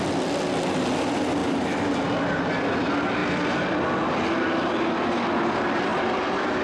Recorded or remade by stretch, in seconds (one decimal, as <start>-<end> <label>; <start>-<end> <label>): 0.0-5.9 recorded; 5.9-6.6 remade